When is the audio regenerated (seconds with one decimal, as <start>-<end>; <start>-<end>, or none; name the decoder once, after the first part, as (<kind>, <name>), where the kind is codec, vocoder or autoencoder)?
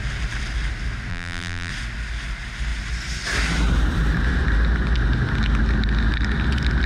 1.1-1.7 (vocoder, BigVGAN v2)